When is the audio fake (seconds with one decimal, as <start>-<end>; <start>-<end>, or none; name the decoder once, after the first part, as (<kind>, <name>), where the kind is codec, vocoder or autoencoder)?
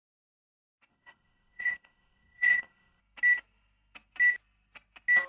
0.9-3.0 (codec, ZipCodec)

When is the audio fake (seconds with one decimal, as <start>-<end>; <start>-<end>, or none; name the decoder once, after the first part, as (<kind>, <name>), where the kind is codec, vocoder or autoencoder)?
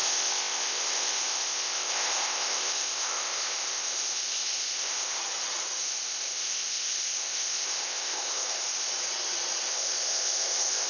0.0-5.2 (codec, ZipCodec); 5.8-8.9; 9.7-10.9